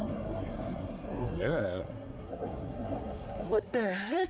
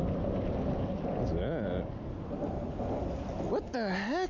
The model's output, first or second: first